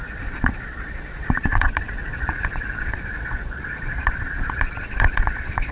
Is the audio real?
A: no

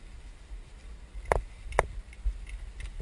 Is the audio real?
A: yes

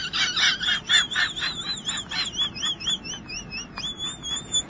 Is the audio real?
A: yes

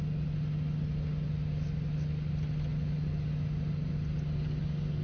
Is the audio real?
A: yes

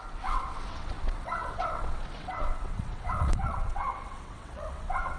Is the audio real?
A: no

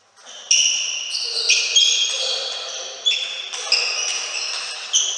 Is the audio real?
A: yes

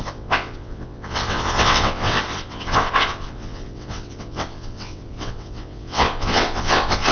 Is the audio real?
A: no